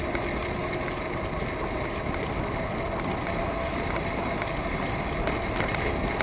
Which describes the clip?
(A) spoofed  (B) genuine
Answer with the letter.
B